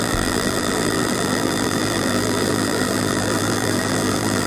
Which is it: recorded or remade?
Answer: remade